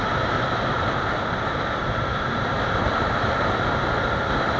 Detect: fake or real real